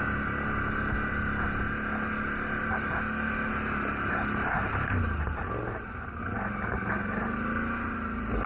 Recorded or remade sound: recorded